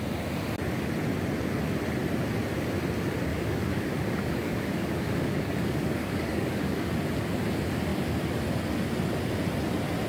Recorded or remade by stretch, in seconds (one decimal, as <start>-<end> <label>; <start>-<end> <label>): 0.0-3.3 recorded; 3.3-6.9 remade; 6.9-10.1 recorded